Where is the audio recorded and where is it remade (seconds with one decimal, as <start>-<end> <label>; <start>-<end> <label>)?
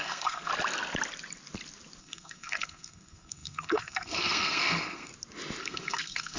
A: 0.0-0.5 remade; 0.5-2.0 recorded; 2.0-5.1 remade; 5.1-5.6 recorded; 5.6-6.4 remade